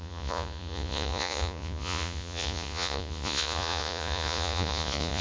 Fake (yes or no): yes